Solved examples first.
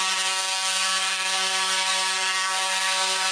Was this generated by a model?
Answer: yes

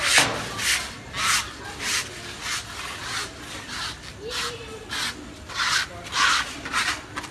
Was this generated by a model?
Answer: no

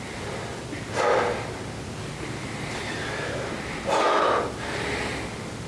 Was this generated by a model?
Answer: no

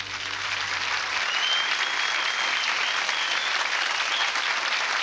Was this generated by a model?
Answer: no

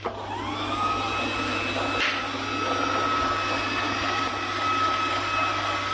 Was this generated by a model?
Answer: no